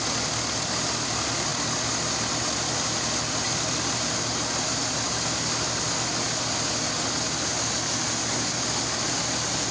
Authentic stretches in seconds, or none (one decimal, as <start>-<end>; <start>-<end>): 0.0-9.7